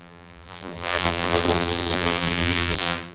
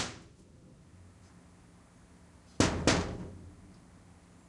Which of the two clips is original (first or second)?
second